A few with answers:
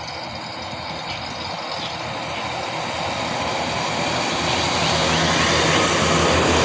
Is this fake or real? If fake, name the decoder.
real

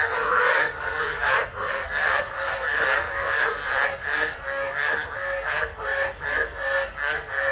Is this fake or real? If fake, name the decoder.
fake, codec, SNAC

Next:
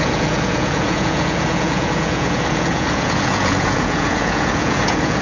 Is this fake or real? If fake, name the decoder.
fake, vocoder, Vocos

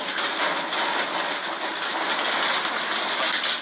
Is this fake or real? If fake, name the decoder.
real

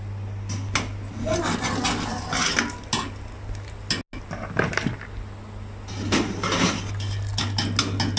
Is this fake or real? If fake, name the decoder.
real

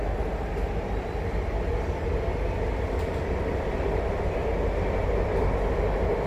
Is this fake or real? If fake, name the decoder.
real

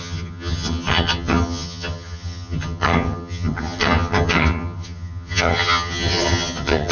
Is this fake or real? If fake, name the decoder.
fake, vocoder, HiFi-GAN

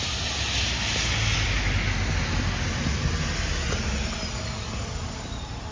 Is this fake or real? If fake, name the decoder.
real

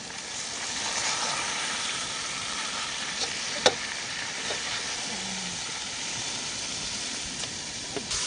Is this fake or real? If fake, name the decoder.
fake, vocoder, BigVGAN v2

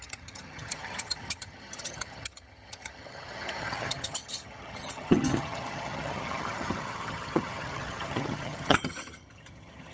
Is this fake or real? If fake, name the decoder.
fake, vocoder, HiFi-GAN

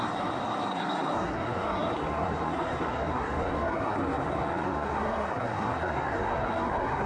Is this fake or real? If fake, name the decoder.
fake, codec, SNAC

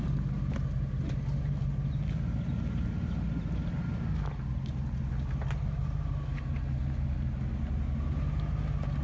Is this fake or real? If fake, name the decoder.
real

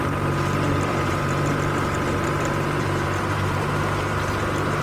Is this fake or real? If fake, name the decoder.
fake, vocoder, BigVGAN v2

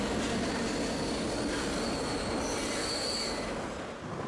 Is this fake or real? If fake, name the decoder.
real